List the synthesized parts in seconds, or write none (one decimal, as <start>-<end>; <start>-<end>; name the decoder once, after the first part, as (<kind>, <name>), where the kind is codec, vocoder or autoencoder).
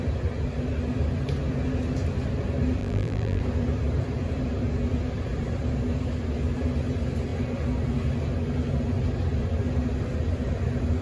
2.8-3.4 (vocoder, BigVGAN v2)